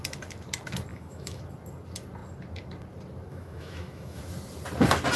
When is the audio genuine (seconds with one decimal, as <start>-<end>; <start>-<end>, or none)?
0.0-0.9; 1.4-3.3; 4.2-5.2